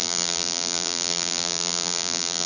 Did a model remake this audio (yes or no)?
yes